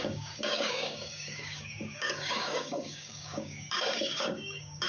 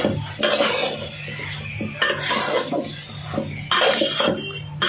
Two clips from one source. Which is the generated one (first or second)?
first